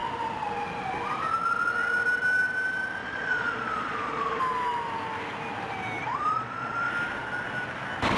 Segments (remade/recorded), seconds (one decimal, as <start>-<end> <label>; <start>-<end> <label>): 0.0-3.0 recorded; 3.0-4.4 remade; 4.4-6.0 recorded; 6.0-6.9 remade; 6.9-8.2 recorded